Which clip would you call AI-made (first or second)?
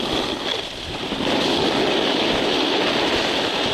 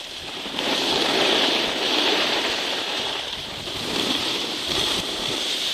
second